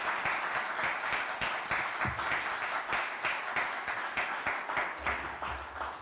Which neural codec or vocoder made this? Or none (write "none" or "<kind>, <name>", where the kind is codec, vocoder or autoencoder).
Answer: none